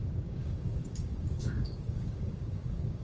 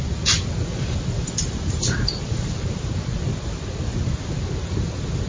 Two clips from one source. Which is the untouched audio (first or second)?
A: second